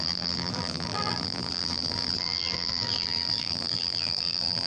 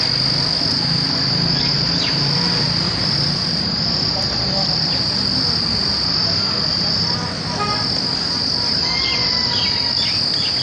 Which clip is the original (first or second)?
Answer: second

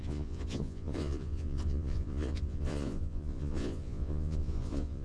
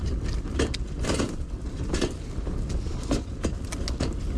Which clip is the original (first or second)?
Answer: second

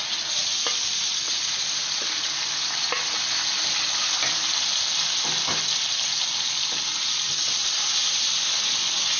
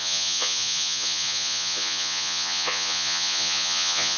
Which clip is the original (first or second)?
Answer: first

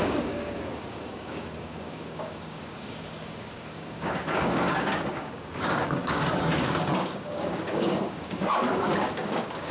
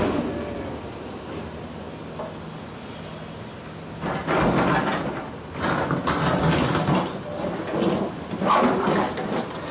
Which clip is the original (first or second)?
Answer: second